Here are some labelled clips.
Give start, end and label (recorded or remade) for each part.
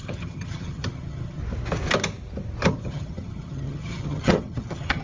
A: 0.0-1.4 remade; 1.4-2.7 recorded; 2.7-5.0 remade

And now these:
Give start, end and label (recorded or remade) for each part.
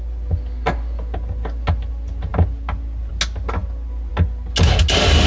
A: 0.0-5.3 recorded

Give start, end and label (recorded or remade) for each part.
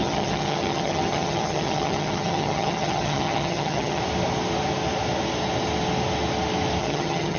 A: 0.0-4.0 remade; 4.0-6.8 recorded; 6.8-7.4 remade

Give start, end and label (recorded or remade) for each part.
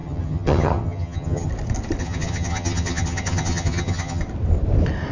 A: 0.0-1.5 remade; 1.5-2.0 recorded; 2.0-4.2 remade; 4.2-5.1 recorded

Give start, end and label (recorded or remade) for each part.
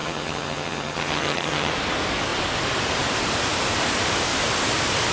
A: 0.0-1.7 remade; 1.7-5.1 recorded